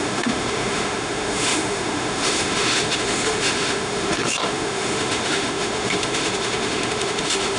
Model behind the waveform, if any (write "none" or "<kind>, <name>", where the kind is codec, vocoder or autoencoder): autoencoder, DAC-VAE